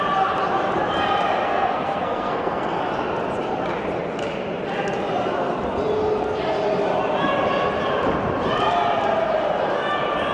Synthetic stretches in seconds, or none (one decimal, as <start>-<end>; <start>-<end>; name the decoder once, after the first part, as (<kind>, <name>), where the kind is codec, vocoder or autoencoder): 1.4-2.8 (codec, SNAC)